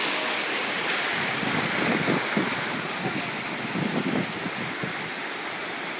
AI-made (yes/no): no